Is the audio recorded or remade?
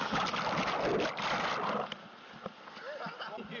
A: recorded